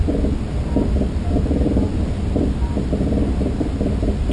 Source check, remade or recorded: recorded